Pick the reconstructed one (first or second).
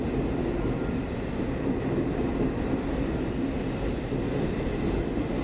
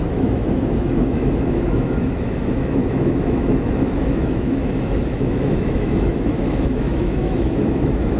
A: second